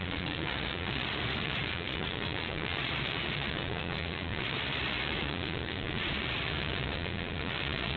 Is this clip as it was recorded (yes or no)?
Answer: no